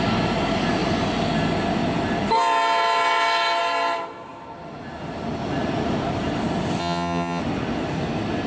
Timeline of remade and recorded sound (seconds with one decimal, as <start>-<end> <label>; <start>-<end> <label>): 0.0-6.8 recorded; 6.8-7.4 remade; 7.4-8.5 recorded